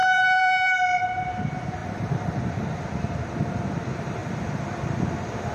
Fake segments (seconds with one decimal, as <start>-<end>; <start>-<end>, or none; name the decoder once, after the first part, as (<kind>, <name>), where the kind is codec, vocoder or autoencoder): 0.0-1.0 (vocoder, BigVGAN v2); 1.8-3.2; 4.2-5.5

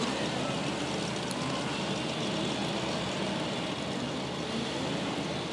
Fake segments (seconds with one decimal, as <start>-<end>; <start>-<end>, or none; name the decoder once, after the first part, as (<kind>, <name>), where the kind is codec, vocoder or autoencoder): none

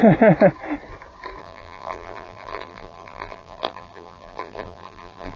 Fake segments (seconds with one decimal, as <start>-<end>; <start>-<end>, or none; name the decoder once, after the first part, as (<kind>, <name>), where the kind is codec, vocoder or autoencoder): 1.4-5.4 (vocoder, BigVGAN v2)

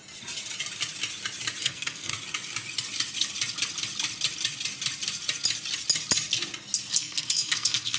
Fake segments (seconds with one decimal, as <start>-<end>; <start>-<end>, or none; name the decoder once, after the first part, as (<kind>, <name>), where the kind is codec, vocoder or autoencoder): 1.6-2.1 (codec, SNAC); 6.9-8.0